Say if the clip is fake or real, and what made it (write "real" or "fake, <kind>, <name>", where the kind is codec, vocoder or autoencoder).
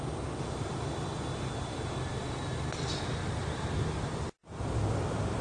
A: real